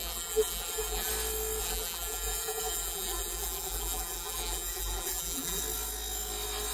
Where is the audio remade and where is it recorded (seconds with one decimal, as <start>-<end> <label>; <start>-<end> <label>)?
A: 0.0-1.1 remade; 1.1-1.6 recorded; 1.6-5.6 remade; 5.6-6.7 recorded